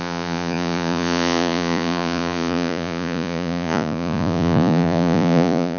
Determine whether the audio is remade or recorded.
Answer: remade